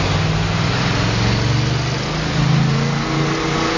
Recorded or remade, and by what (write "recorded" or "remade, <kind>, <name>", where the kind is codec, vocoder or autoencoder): recorded